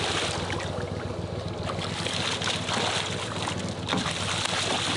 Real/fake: real